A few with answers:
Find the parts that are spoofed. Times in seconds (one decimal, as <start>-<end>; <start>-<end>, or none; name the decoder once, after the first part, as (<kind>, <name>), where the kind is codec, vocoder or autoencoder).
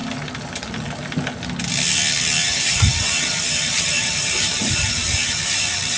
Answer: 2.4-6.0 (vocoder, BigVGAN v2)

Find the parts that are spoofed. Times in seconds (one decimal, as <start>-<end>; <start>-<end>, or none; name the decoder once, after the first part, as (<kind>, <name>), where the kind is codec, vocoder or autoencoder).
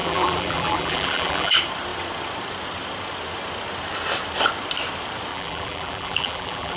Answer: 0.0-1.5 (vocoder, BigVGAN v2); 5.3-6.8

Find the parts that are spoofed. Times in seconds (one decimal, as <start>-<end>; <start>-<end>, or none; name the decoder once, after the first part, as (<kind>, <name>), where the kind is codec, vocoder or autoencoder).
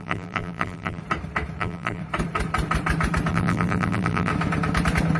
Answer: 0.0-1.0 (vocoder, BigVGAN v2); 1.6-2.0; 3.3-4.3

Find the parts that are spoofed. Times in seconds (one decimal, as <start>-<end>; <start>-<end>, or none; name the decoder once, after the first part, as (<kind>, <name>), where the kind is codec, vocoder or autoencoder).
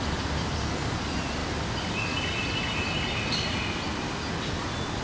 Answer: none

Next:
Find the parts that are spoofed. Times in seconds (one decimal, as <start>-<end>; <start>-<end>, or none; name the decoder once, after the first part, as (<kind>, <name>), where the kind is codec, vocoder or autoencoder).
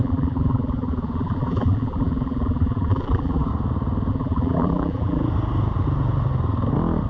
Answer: 0.0-3.5 (vocoder, BigVGAN v2); 4.1-5.2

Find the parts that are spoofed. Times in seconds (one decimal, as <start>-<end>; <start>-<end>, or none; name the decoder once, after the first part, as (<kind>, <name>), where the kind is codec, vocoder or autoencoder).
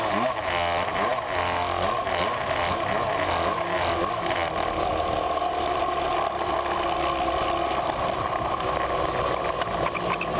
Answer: none